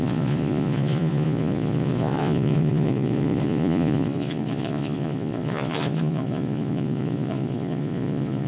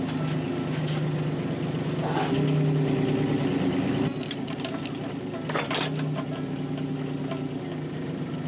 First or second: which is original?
second